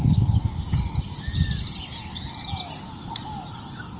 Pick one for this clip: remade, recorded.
recorded